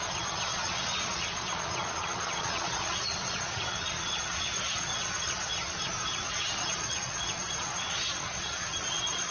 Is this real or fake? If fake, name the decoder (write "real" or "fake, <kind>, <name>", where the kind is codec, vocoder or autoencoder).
fake, vocoder, Vocos